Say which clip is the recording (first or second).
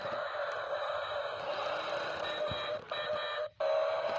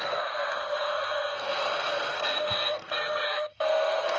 first